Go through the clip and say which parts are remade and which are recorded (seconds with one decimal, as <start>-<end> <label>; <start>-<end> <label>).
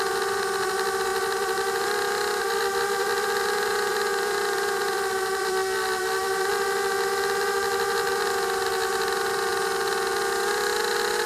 0.0-6.5 remade; 6.5-8.9 recorded; 8.9-9.5 remade; 9.5-10.5 recorded; 10.5-11.3 remade